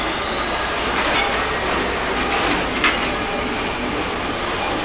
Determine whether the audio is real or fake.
real